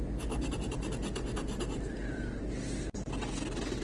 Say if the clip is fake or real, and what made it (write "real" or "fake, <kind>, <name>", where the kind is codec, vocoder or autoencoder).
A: real